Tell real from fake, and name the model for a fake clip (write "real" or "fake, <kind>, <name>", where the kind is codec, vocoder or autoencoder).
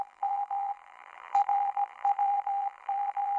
fake, vocoder, BigVGAN v2